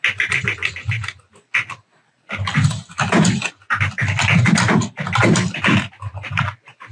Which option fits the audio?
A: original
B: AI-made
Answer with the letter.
A